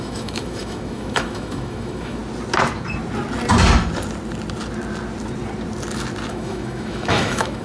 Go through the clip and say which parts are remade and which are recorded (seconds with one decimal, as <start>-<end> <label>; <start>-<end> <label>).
0.0-2.2 remade; 2.2-6.3 recorded; 6.3-7.6 remade